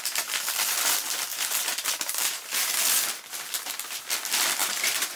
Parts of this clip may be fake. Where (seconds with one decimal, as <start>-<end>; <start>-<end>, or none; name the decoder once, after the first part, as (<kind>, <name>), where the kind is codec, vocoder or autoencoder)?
1.3-2.7 (vocoder, BigVGAN v2); 4.6-5.2